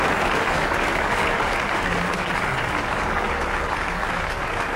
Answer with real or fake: fake